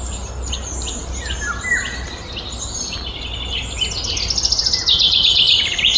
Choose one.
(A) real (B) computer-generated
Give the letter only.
A